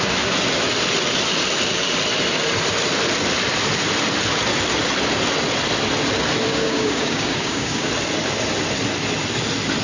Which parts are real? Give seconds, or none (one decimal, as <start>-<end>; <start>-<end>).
0.0-6.5; 7.9-9.8